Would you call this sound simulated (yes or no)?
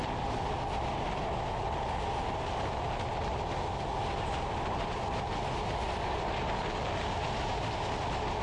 no